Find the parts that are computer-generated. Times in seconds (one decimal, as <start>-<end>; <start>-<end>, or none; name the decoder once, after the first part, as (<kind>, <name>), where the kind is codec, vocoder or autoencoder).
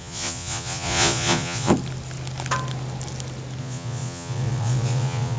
0.0-1.7 (vocoder, Vocos); 3.6-5.4